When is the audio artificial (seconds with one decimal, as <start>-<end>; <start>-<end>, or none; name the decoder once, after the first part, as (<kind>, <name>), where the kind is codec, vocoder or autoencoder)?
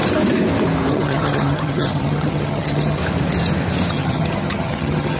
0.9-3.0 (vocoder, HiFi-GAN); 3.9-5.2